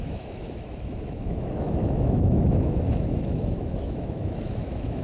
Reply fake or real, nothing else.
fake